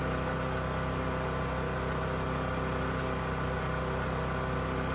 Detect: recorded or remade recorded